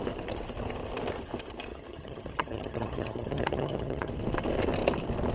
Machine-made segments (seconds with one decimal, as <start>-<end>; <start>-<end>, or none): 1.7-4.1